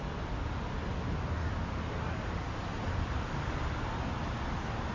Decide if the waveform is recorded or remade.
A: recorded